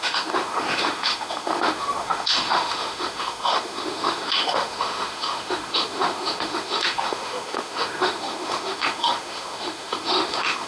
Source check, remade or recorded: remade